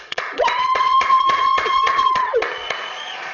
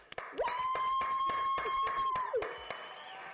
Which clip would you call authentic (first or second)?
second